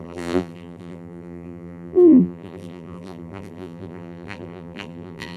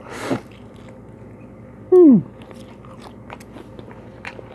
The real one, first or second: second